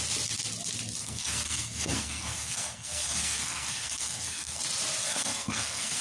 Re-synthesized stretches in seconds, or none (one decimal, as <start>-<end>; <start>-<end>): 1.0-4.6; 5.0-6.0